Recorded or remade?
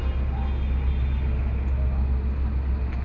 recorded